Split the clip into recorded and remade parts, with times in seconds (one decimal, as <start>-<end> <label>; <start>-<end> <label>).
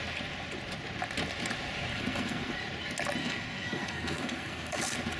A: 0.0-1.9 recorded; 1.9-2.6 remade; 2.6-3.2 recorded; 3.2-5.2 remade